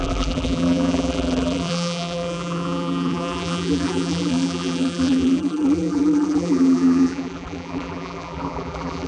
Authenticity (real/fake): fake